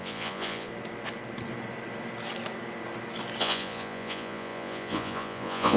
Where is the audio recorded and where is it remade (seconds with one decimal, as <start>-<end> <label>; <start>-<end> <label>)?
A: 0.0-0.7 remade; 0.7-3.4 recorded; 3.4-5.8 remade